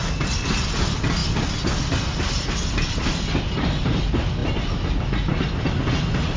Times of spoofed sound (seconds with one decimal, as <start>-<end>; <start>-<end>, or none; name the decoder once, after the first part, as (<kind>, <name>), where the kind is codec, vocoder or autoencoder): none